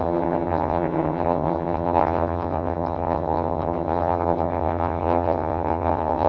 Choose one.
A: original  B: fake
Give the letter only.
B